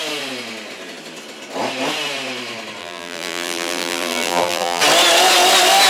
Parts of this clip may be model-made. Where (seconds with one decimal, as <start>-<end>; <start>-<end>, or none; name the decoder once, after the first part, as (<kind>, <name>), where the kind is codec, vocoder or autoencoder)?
2.8-4.8 (vocoder, BigVGAN v2)